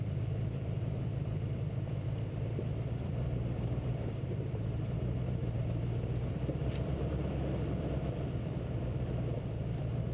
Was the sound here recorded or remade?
remade